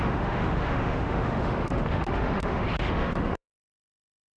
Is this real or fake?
fake